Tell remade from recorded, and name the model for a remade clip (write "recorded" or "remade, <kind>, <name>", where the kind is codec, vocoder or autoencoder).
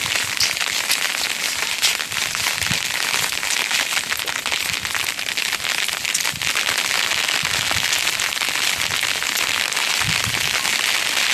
recorded